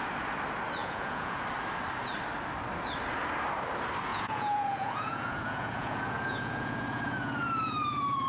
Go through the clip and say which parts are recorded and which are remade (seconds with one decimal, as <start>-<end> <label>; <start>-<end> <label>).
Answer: 0.0-0.8 recorded; 0.8-1.4 remade; 1.4-4.1 recorded; 4.1-8.3 remade